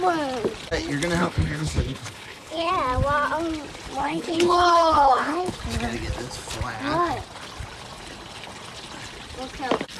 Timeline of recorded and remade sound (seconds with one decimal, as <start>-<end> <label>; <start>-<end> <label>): 0.0-1.2 recorded; 1.2-2.7 remade; 2.7-4.0 recorded; 4.0-5.6 remade; 5.6-10.0 recorded